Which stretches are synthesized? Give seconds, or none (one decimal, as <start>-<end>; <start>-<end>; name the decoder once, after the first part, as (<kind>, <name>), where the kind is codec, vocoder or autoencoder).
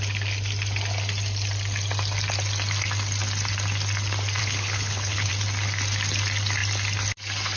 4.4-5.3 (codec, HILCodec)